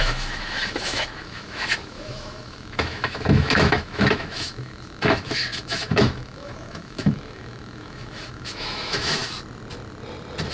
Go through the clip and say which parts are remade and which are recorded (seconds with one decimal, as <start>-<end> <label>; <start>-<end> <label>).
0.0-9.2 remade; 9.2-10.5 recorded